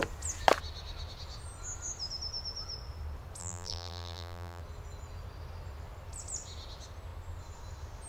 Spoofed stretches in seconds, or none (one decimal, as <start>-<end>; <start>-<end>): 3.4-4.6